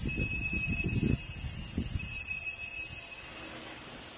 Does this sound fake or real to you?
real